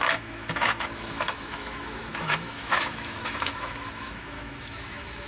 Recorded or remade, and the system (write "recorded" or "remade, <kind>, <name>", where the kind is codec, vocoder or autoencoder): remade, autoencoder, DAC-VAE